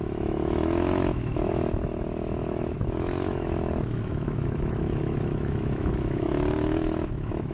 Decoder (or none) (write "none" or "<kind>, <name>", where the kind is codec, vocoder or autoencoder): autoencoder, DAC-VAE